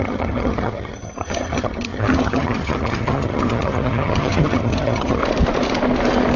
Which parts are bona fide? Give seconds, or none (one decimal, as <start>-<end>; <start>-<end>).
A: 5.2-6.4